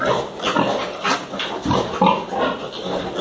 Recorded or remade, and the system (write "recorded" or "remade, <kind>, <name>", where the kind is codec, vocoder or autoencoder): recorded